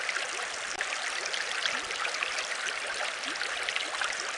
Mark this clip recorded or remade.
recorded